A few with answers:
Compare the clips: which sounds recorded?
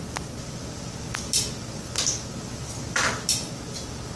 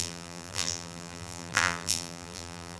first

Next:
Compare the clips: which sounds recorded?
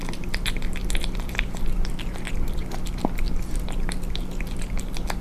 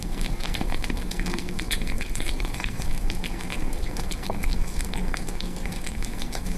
first